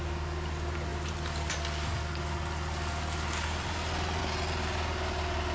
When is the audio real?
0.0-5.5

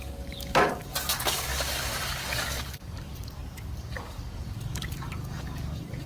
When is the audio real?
none

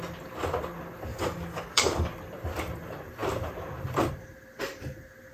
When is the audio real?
0.0-1.1; 2.1-5.3

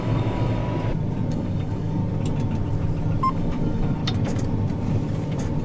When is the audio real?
0.6-1.3; 2.0-3.3; 4.0-5.6

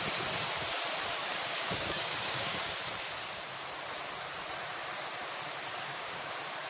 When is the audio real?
0.0-1.2; 2.7-5.7; 6.3-6.7

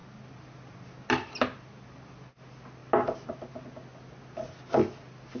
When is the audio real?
0.0-5.4